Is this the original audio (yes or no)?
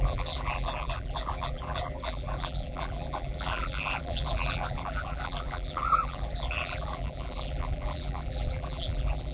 no